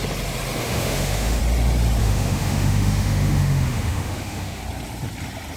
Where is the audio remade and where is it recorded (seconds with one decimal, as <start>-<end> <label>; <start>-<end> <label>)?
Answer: 0.0-0.6 recorded; 0.6-1.4 remade; 1.4-2.0 recorded; 2.0-4.6 remade; 4.6-5.6 recorded